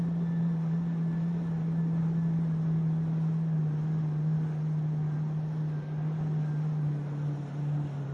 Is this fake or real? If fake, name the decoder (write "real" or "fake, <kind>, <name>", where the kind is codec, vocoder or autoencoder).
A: real